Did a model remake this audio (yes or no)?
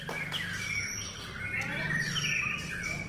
no